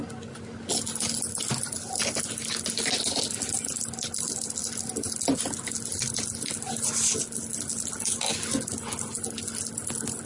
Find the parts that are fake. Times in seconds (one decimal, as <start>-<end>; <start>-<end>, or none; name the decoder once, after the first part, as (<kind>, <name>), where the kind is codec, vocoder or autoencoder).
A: none